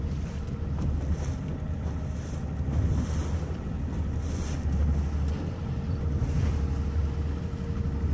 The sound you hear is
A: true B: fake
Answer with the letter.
A